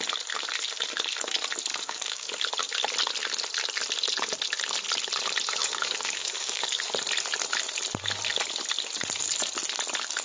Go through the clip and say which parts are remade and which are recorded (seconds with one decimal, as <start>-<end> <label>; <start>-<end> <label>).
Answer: 0.0-1.7 recorded; 1.7-2.3 remade; 2.3-5.6 recorded; 5.6-6.8 remade; 6.8-10.2 recorded